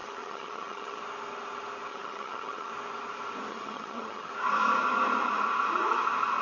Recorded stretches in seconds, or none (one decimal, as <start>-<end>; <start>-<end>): 1.0-1.9; 2.7-3.5; 4.3-6.4